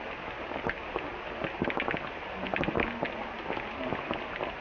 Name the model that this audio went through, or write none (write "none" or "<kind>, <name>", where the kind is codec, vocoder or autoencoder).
none